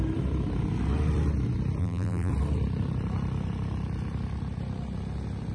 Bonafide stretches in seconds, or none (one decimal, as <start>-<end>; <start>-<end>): 0.0-1.8; 2.3-5.5